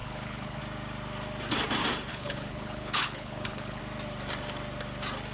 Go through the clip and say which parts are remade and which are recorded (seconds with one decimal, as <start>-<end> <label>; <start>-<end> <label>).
0.0-0.6 remade; 0.6-2.1 recorded; 2.1-3.8 remade; 3.8-5.3 recorded